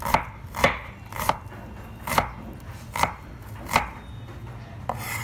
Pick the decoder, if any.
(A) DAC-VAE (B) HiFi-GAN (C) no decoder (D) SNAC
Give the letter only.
C